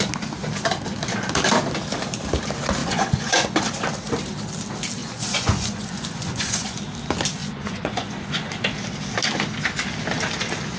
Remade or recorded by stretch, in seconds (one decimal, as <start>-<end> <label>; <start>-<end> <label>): 0.0-2.8 recorded; 2.8-3.6 remade; 3.6-5.0 recorded; 5.0-6.8 remade; 6.8-7.4 recorded; 7.4-8.5 remade; 8.5-10.8 recorded